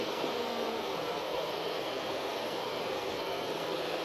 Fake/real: fake